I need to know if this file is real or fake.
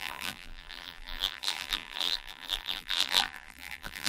fake